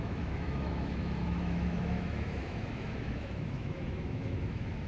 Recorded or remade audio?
remade